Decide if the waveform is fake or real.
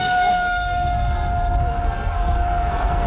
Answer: fake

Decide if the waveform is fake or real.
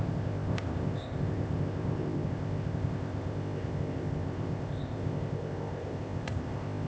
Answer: fake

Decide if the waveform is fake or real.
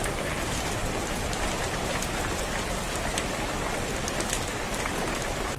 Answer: real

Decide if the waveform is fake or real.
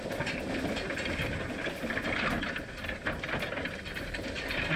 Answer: real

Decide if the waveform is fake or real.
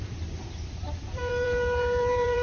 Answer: fake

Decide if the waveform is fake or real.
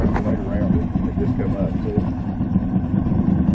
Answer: real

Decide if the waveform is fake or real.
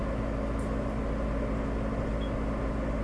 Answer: real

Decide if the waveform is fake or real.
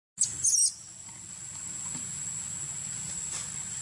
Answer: real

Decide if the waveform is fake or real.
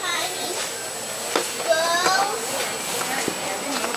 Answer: real